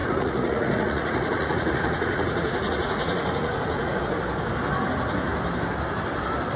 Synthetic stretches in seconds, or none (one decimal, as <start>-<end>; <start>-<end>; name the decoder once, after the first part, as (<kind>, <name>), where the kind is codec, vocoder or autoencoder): 0.0-4.0 (vocoder, Vocos)